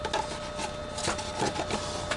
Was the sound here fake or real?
real